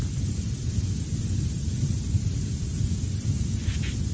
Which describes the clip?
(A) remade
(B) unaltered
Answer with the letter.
B